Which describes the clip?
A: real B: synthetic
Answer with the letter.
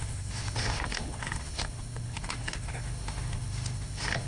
B